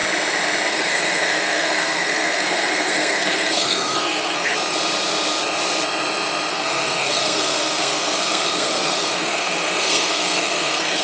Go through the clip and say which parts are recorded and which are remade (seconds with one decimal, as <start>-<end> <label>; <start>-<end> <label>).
0.0-0.7 recorded; 0.7-4.5 remade; 4.5-6.5 recorded; 6.5-11.0 remade